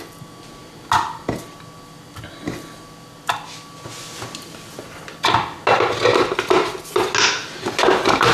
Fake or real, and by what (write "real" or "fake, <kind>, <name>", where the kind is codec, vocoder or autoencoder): real